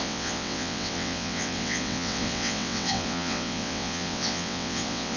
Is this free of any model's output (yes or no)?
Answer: no